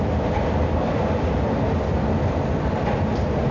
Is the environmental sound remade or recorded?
recorded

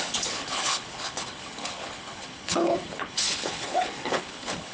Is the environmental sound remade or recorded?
remade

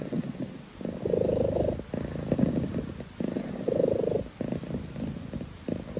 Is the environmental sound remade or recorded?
recorded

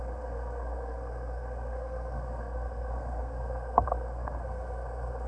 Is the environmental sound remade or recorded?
remade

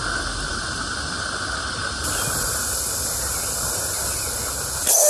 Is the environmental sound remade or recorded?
recorded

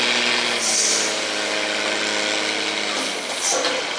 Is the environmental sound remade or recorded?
recorded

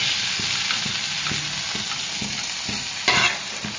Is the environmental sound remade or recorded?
recorded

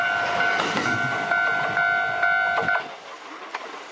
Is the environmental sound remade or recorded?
recorded